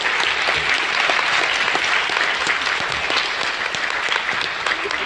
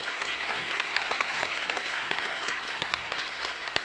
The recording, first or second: first